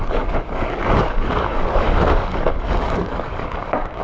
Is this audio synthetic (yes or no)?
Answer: yes